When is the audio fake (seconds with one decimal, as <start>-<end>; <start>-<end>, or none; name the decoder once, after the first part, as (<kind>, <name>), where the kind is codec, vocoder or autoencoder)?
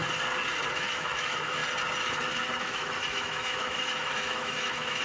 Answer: 0.7-1.6 (autoencoder, DAC-VAE); 2.6-5.0